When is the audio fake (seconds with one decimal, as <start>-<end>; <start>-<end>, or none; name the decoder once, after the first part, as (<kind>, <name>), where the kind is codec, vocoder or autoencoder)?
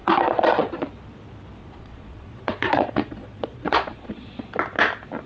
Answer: 0.0-0.7 (vocoder, Vocos); 1.6-4.3